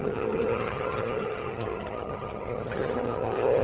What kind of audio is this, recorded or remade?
remade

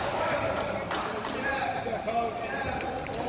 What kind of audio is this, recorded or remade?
remade